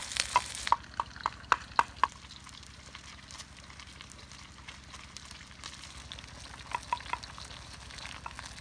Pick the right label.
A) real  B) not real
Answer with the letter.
A